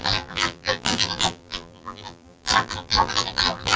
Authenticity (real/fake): fake